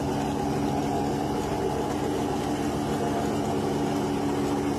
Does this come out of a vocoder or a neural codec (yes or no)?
no